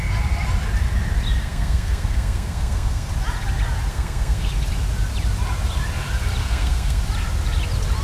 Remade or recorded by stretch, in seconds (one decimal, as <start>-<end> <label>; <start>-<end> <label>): 0.0-1.4 recorded; 1.4-3.1 remade; 3.1-3.9 recorded; 3.9-4.5 remade; 4.5-6.4 recorded; 6.4-7.0 remade; 7.0-8.0 recorded